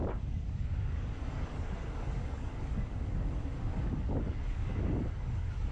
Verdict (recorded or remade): remade